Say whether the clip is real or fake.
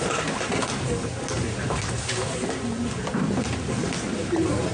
real